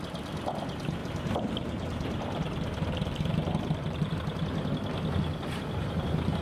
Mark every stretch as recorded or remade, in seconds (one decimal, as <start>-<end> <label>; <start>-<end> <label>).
0.0-1.0 recorded; 1.0-4.1 remade; 4.1-6.4 recorded